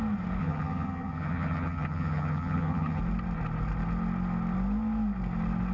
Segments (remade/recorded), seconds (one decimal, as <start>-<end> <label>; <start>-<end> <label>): 0.0-0.4 recorded; 0.4-3.0 remade; 3.0-5.7 recorded